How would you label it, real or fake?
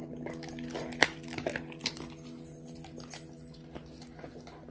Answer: real